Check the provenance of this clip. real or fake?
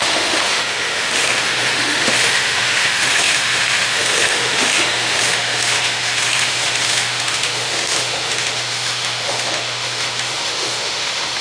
fake